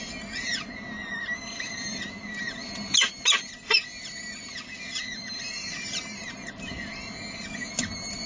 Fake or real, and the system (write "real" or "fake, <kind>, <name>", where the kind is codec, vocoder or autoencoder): real